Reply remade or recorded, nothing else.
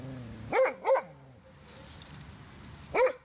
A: recorded